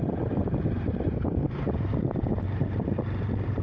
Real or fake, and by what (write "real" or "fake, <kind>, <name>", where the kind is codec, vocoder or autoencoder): real